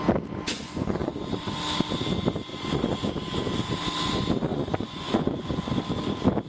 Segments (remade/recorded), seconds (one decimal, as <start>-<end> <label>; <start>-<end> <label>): 0.0-0.5 recorded; 0.5-1.5 remade; 1.5-2.5 recorded; 2.5-3.1 remade; 3.1-4.5 recorded; 4.5-5.5 remade; 5.5-6.5 recorded